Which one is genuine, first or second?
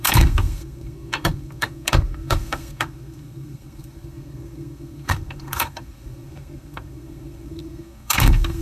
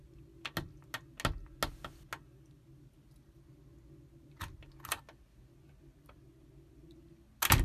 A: second